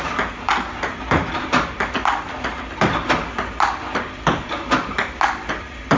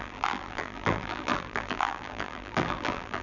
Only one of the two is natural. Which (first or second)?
first